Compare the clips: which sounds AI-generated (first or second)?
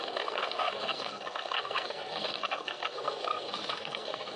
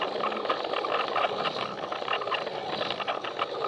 first